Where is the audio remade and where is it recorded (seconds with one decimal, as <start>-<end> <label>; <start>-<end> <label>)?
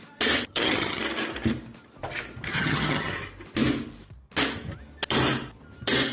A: 0.0-0.4 recorded; 0.4-1.0 remade; 1.0-2.5 recorded; 2.5-3.1 remade; 3.1-6.1 recorded